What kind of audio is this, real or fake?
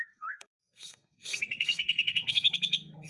fake